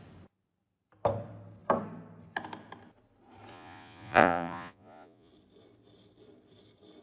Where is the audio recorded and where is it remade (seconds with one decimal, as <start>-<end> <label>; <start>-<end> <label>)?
0.0-3.5 recorded; 3.5-5.3 remade; 5.3-7.0 recorded